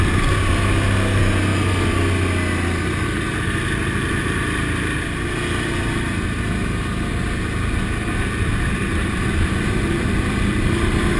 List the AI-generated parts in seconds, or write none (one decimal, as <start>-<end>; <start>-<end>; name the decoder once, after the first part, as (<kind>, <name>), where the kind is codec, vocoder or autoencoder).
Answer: 9.0-11.2 (vocoder, BigVGAN v2)